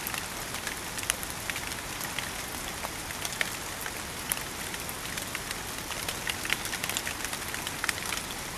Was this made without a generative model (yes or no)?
yes